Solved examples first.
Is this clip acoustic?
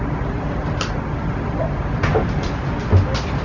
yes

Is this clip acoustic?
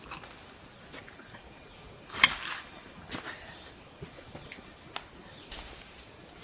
yes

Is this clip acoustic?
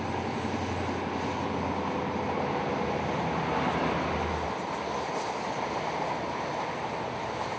yes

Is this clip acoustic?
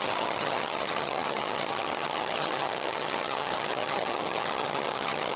no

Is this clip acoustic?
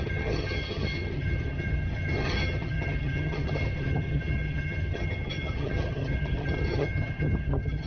no